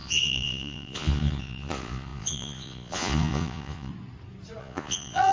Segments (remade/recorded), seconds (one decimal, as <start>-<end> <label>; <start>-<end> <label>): 0.0-3.9 remade; 3.9-4.6 recorded; 4.6-5.3 remade